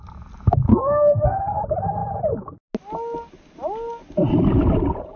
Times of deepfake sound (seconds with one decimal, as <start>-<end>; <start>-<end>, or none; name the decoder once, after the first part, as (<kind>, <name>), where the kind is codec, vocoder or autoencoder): 0.7-1.6 (codec, SNAC)